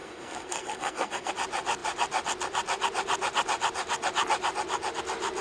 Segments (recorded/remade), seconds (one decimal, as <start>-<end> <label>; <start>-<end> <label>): 0.0-1.3 remade; 1.3-5.4 recorded